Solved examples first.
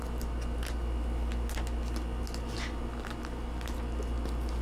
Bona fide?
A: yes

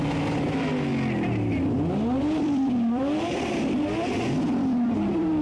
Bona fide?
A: no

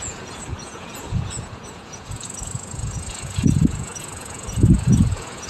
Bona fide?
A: no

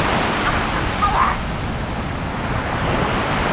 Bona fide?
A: yes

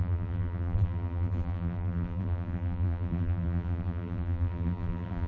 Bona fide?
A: no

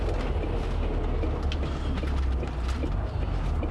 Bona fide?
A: yes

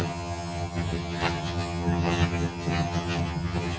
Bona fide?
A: no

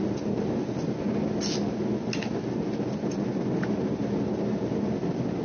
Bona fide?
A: yes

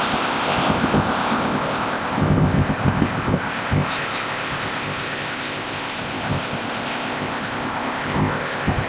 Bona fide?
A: no